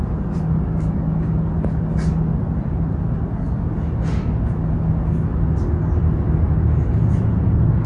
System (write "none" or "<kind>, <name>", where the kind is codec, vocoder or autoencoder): none